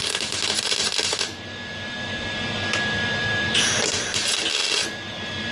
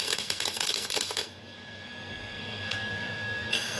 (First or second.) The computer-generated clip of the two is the second